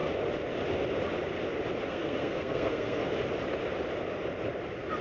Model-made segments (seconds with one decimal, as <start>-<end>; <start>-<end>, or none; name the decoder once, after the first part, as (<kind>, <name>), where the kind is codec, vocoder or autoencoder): 1.9-3.0 (codec, SNAC)